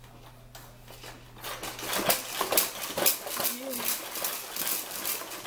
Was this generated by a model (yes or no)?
no